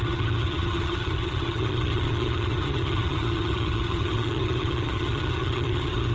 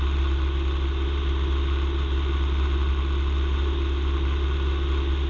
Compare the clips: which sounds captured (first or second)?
second